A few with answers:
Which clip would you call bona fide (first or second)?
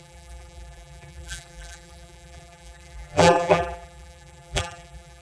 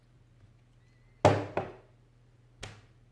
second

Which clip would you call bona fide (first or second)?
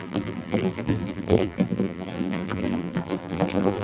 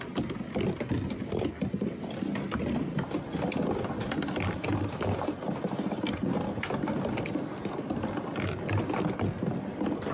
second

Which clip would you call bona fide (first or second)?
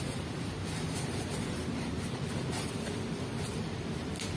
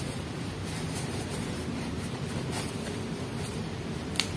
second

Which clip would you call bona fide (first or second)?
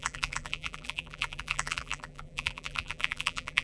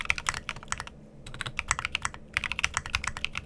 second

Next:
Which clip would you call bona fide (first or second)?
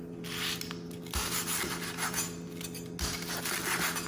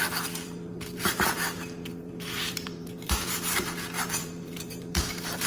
first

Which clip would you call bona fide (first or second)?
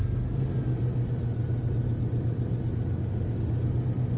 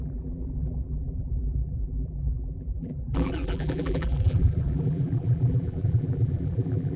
first